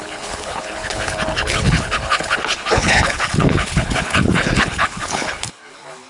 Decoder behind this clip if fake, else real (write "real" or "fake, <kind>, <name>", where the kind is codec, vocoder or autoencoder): fake, codec, HILCodec